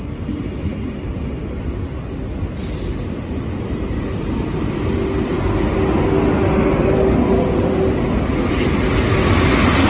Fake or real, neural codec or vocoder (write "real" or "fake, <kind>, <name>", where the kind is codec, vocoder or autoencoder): real